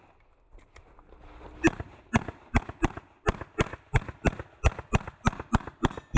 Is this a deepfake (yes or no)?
no